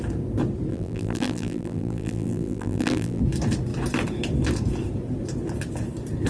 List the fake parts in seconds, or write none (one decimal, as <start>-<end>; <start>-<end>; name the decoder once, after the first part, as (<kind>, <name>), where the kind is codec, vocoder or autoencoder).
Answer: 0.7-3.2 (vocoder, BigVGAN v2)